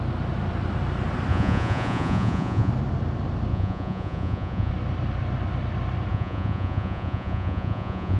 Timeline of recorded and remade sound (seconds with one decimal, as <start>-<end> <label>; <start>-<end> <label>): 0.0-1.3 recorded; 1.3-2.7 remade; 2.7-3.5 recorded; 3.5-4.7 remade; 4.7-6.1 recorded; 6.1-8.2 remade